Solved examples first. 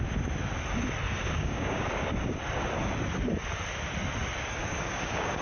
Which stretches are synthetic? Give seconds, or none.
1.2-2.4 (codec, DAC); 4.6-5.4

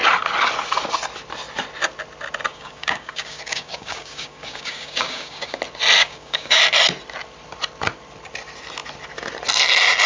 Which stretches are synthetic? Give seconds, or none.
2.5-5.6 (codec, DAC); 6.0-6.6

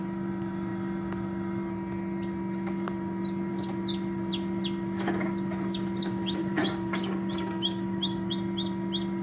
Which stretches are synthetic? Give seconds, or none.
6.4-8.3 (codec, DAC)

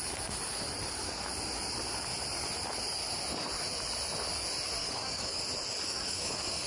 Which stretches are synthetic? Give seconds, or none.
4.8-5.4 (codec, DAC); 5.9-6.7

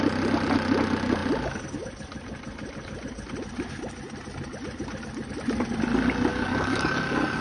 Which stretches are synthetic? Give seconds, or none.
6.3-7.4 (codec, DAC)